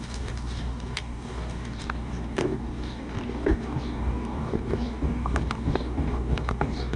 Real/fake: fake